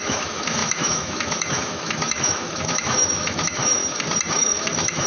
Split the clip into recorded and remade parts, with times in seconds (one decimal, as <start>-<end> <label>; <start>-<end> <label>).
0.0-3.8 remade; 3.8-4.3 recorded; 4.3-5.1 remade